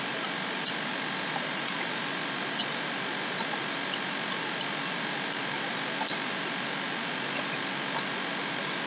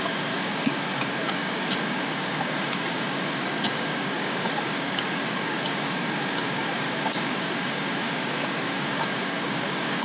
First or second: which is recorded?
first